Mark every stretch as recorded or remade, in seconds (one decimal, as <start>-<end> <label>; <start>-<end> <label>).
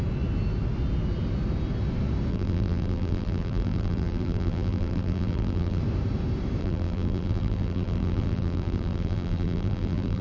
0.0-2.3 recorded; 2.3-5.8 remade; 5.8-6.6 recorded; 6.6-10.2 remade